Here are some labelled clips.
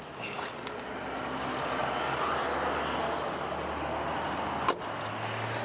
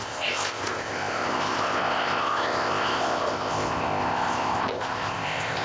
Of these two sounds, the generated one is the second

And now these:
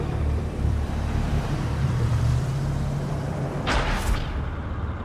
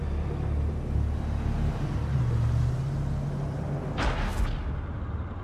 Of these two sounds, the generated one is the first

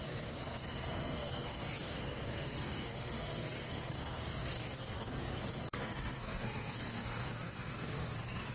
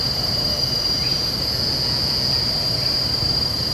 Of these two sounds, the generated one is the first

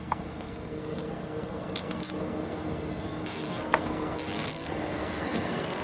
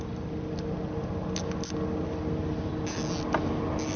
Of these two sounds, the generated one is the first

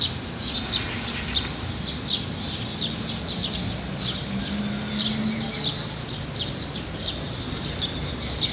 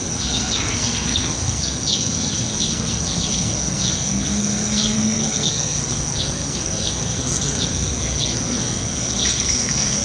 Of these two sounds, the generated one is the second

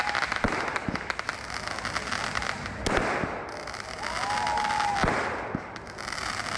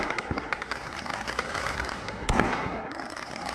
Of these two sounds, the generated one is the second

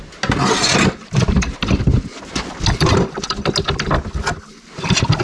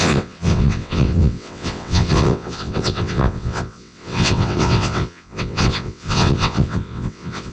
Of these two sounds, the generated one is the second